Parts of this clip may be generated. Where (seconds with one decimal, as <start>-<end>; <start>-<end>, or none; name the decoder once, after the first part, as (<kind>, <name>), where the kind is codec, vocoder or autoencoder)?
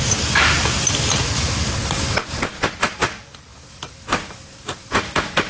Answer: none